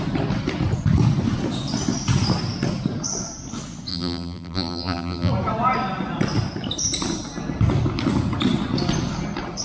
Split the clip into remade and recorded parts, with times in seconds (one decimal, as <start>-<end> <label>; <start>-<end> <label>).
0.0-3.9 recorded; 3.9-5.3 remade; 5.3-9.6 recorded